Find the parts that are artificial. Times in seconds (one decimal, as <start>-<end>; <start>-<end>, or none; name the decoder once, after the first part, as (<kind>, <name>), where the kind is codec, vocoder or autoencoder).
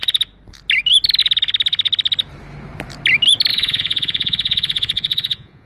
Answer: 3.5-5.7 (vocoder, Vocos)